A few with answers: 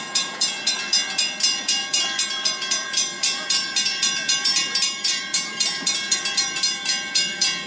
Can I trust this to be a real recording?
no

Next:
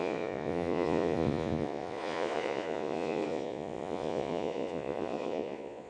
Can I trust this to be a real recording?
no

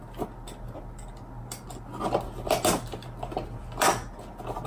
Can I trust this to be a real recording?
yes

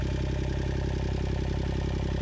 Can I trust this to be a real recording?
yes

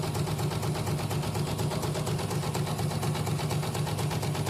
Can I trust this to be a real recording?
yes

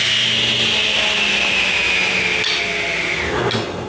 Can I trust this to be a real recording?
yes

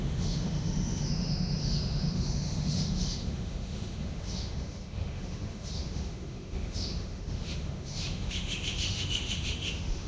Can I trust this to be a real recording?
no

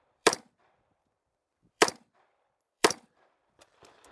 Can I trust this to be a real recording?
no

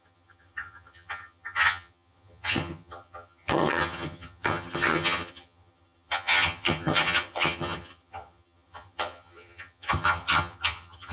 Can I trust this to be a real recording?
no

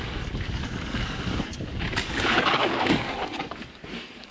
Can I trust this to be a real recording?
no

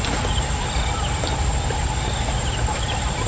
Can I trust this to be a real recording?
yes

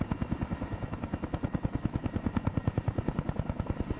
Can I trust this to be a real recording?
yes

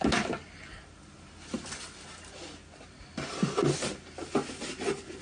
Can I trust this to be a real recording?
yes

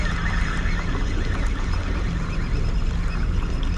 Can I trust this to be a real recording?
yes